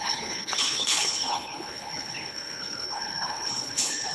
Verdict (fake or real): fake